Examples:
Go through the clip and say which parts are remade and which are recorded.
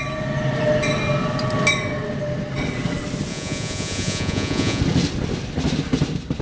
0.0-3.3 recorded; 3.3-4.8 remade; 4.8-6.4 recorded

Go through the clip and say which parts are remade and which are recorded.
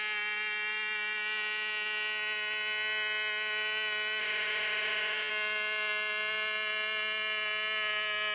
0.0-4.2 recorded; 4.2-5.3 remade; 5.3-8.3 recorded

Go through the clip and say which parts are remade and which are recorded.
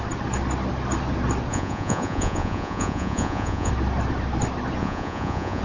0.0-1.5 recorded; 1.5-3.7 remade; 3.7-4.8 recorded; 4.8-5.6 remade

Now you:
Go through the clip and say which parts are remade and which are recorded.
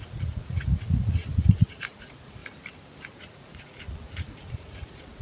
0.0-2.4 remade; 2.4-3.2 recorded; 3.2-5.2 remade